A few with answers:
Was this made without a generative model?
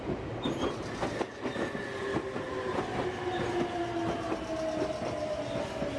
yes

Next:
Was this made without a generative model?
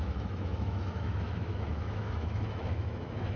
no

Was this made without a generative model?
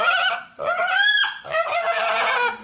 yes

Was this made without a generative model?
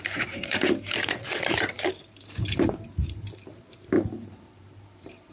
no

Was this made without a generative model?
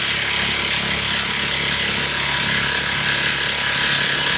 yes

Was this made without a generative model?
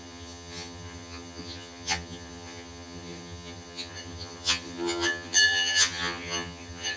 no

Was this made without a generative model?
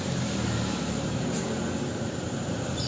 yes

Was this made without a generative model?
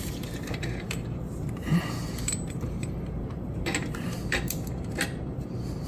no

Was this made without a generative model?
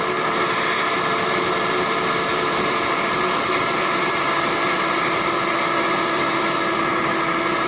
yes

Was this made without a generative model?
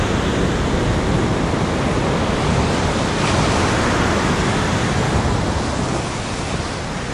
yes